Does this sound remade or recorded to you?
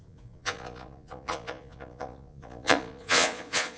remade